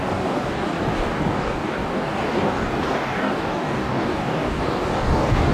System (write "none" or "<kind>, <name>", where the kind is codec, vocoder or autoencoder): codec, DAC